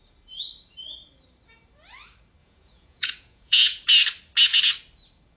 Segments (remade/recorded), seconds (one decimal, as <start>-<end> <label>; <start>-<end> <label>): 0.0-2.4 recorded; 2.4-3.9 remade; 3.9-5.4 recorded